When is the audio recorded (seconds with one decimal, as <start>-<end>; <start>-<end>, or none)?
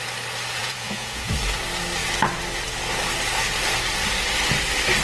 0.0-0.6; 1.3-5.0